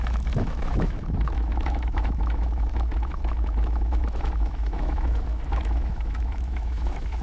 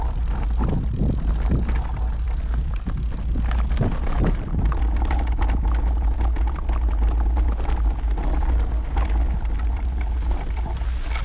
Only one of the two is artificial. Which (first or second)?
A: first